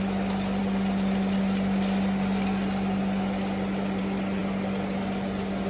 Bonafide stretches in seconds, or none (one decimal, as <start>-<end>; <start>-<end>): 0.0-5.7